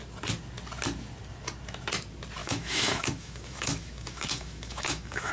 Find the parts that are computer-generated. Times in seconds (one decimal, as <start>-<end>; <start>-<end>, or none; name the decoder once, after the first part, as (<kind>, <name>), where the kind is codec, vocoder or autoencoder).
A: 2.4-5.3 (autoencoder, DAC-VAE)

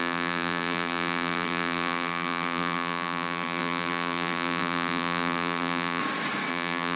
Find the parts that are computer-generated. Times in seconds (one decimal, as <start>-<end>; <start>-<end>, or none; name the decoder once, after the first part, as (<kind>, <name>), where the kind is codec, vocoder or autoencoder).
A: 0.0-6.0 (vocoder, BigVGAN v2); 6.5-7.0

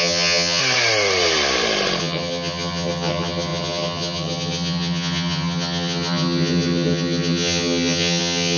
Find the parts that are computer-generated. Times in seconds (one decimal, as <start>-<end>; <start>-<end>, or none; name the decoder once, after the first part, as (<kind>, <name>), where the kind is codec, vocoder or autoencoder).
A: 0.0-0.6 (vocoder, HiFi-GAN); 2.0-8.6

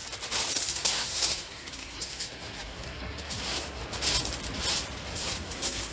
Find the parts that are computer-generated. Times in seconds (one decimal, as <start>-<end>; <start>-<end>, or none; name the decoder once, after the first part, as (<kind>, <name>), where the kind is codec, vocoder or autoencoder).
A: 0.7-3.8 (codec, SNAC); 5.1-5.9

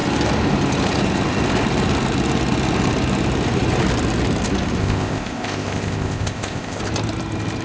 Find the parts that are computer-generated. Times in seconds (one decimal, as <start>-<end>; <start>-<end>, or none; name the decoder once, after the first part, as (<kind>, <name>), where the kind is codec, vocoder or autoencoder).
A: 4.8-6.8 (codec, ZipCodec)